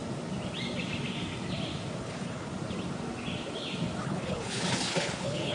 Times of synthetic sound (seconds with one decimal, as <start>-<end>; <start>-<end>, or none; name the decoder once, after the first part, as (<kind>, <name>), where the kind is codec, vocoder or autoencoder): 2.0-2.5 (codec, HILCodec); 4.0-5.5